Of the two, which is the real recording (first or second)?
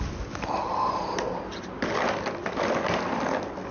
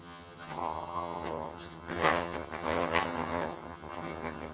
first